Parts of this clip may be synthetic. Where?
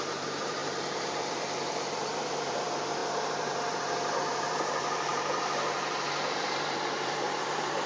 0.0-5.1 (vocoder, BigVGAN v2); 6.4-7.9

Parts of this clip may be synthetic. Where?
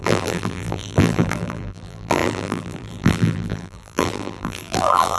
0.0-5.2 (vocoder, BigVGAN v2)